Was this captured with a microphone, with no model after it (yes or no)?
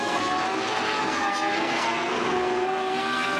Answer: no